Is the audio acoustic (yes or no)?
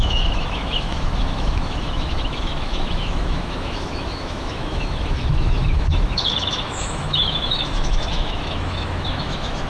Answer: no